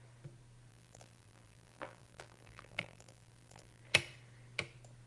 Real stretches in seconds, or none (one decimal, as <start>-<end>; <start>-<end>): 0.0-0.7; 3.8-5.1